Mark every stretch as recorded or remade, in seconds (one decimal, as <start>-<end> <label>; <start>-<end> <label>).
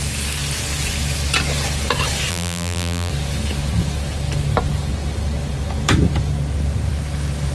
0.0-2.3 recorded; 2.3-3.1 remade; 3.1-7.5 recorded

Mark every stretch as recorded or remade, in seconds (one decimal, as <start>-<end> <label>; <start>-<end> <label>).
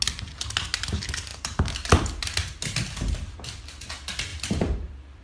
0.0-1.3 recorded; 1.3-3.9 remade; 3.9-4.3 recorded; 4.3-5.2 remade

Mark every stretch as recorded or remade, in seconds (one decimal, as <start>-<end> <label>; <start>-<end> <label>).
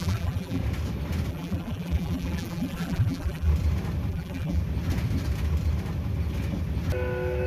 0.0-0.6 remade; 0.6-1.3 recorded; 1.3-3.5 remade; 3.5-4.1 recorded; 4.1-4.6 remade; 4.6-7.5 recorded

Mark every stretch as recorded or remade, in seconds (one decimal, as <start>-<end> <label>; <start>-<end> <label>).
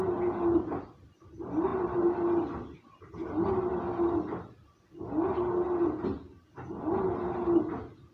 0.0-8.1 recorded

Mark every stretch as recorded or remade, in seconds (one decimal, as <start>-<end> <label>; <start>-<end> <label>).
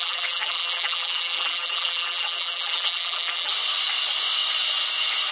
0.0-3.5 remade; 3.5-5.3 recorded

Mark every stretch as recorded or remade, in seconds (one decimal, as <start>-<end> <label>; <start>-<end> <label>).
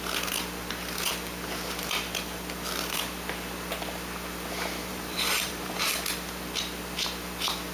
0.0-4.9 recorded; 4.9-5.9 remade; 5.9-7.7 recorded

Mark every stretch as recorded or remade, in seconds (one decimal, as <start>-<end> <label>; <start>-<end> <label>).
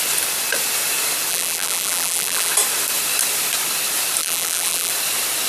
0.0-1.3 recorded; 1.3-2.5 remade; 2.5-4.2 recorded; 4.2-4.9 remade; 4.9-5.5 recorded